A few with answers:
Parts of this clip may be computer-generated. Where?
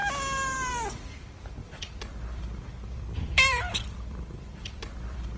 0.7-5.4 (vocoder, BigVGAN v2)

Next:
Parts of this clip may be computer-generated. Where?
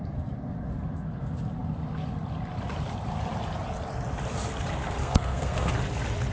5.0-5.7 (codec, SNAC)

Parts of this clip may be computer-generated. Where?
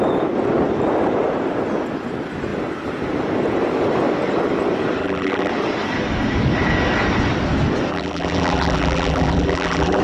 5.0-5.5 (vocoder, BigVGAN v2); 7.9-10.0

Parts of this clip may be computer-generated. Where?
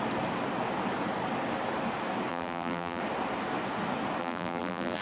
2.3-3.0 (vocoder, BigVGAN v2); 4.2-5.0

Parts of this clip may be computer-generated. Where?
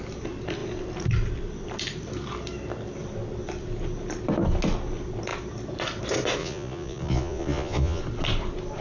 6.4-8.0 (vocoder, Vocos)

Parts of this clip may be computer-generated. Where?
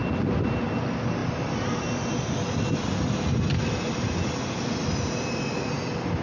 none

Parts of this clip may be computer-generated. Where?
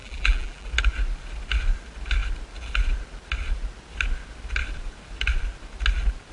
0.0-0.7 (vocoder, BigVGAN v2)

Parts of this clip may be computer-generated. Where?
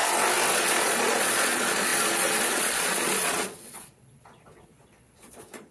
0.5-5.7 (vocoder, Vocos)